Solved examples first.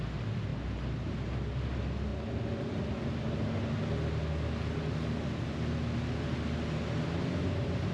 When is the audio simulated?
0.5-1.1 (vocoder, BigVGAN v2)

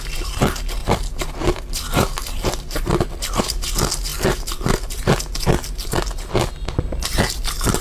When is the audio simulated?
0.8-3.4 (vocoder, BigVGAN v2)

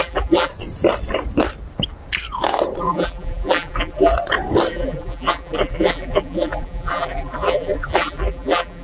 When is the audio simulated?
0.0-0.5 (vocoder, BigVGAN v2); 2.8-4.1; 4.7-8.8

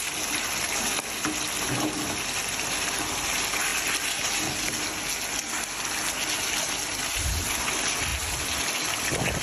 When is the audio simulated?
none

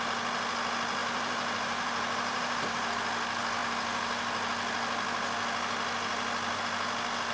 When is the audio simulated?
1.0-2.9 (vocoder, BigVGAN v2)

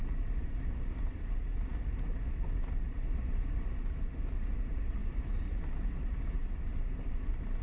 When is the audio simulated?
0.0-7.6 (vocoder, BigVGAN v2)